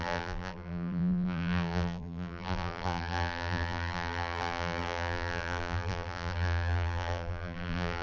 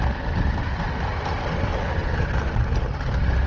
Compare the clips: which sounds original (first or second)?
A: second